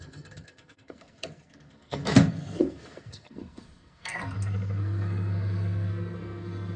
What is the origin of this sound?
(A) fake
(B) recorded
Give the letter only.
A